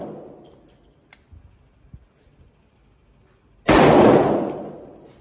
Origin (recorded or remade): recorded